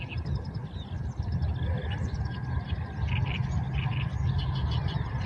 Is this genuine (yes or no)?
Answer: yes